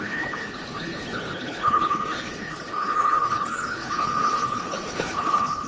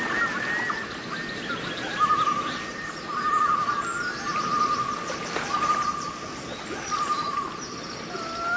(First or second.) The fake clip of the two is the first